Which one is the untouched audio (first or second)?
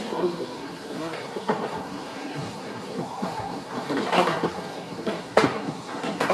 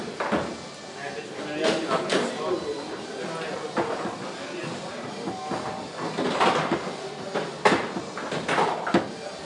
second